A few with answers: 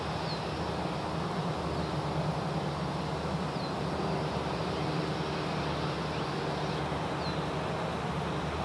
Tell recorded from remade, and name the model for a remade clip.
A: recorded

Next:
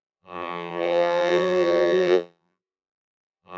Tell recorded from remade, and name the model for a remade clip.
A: remade, vocoder, BigVGAN v2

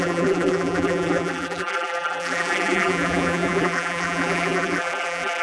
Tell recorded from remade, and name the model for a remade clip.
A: remade, vocoder, BigVGAN v2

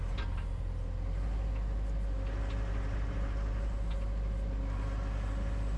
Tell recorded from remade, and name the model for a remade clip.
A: recorded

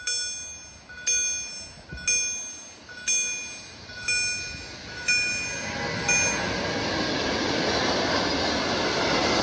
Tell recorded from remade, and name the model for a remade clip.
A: recorded